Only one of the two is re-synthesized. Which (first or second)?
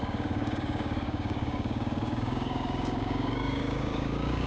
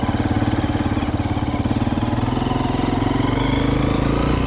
first